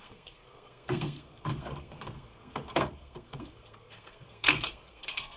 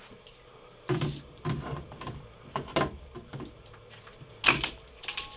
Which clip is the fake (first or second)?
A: first